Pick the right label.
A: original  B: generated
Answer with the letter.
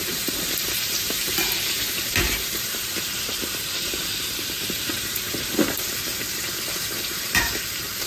B